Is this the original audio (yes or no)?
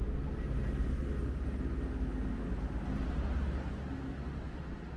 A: yes